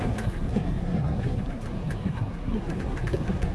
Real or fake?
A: fake